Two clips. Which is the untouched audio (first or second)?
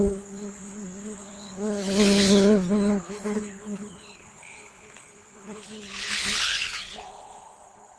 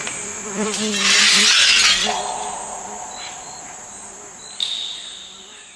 second